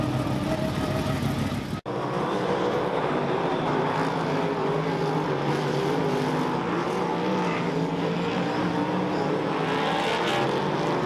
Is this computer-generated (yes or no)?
no